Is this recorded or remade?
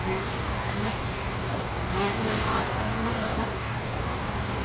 remade